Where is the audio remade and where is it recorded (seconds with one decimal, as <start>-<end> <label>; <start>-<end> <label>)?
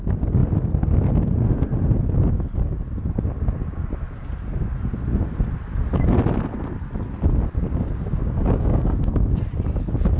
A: 0.0-7.7 recorded; 7.7-9.4 remade; 9.4-10.2 recorded